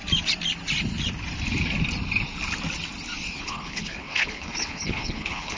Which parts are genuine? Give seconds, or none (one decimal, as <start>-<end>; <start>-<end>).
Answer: 0.0-3.4